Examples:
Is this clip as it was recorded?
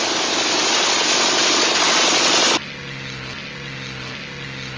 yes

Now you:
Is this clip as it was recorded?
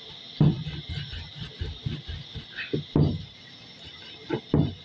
yes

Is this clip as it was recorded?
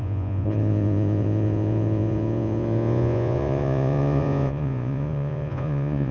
no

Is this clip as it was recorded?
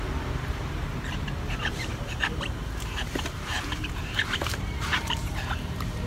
no